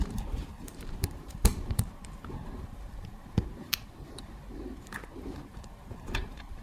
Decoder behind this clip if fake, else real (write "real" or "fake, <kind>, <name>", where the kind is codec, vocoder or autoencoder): fake, vocoder, BigVGAN v2